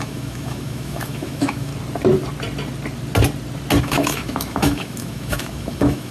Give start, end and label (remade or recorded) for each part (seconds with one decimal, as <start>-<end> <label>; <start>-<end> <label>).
0.0-1.7 remade; 1.7-3.8 recorded; 3.8-6.1 remade